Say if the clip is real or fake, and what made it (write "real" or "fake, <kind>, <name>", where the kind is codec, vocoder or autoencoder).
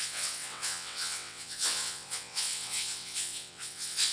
fake, vocoder, WaveNeXt